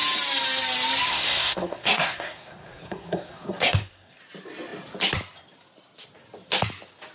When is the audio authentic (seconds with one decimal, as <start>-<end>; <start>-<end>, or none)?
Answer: 0.0-1.1; 4.2-7.1